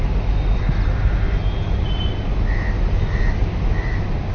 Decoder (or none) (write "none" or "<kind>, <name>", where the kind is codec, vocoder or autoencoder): none